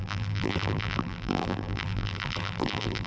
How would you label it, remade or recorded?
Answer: remade